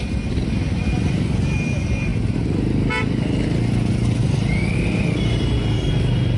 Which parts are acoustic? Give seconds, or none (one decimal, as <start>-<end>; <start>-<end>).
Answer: 0.0-6.4

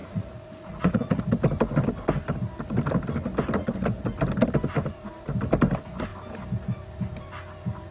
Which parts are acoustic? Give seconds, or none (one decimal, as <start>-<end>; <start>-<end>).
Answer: 1.2-7.9

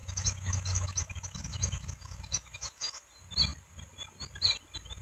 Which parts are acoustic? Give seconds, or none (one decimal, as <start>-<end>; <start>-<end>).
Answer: 3.0-5.0